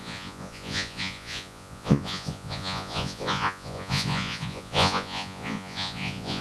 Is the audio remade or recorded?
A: remade